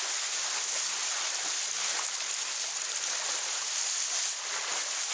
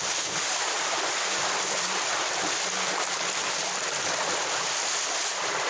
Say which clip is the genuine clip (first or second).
first